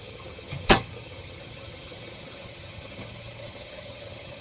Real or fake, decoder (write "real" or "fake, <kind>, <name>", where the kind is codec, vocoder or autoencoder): fake, vocoder, HiFi-GAN